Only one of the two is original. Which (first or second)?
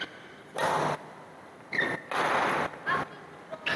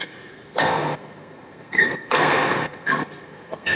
first